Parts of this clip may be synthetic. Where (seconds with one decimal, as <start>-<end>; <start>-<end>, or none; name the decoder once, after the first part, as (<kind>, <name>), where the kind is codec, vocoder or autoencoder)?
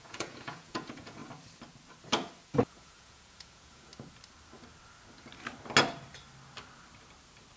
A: 0.0-1.2 (vocoder, Vocos); 2.7-3.9